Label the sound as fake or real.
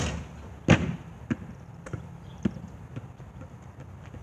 real